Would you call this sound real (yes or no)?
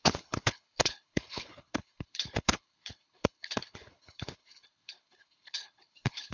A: no